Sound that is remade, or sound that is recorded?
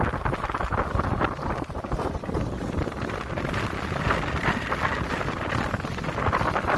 recorded